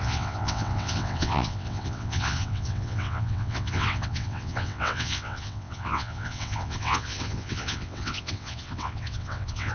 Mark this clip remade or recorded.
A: remade